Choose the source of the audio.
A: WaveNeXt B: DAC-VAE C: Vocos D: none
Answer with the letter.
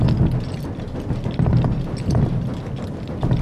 D